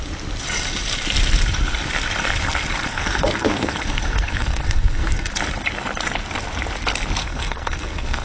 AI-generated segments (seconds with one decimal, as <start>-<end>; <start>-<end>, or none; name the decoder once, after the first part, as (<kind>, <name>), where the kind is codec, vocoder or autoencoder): 2.9-5.3 (codec, SNAC); 7.2-8.2